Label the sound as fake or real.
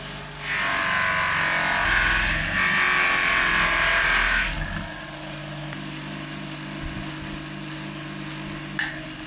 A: real